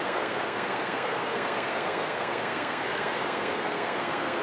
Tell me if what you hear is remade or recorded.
remade